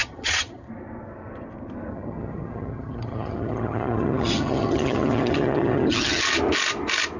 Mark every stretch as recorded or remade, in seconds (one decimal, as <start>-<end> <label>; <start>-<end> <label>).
0.0-0.7 remade; 0.7-1.9 recorded; 1.9-6.2 remade; 6.2-7.2 recorded